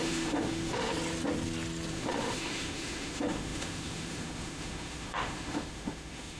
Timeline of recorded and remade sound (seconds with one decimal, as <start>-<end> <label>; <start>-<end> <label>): 0.0-0.9 remade; 0.9-1.9 recorded; 1.9-6.4 remade